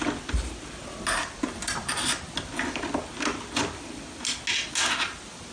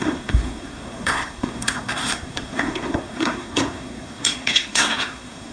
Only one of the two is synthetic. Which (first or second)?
second